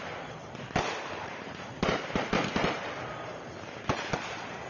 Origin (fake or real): fake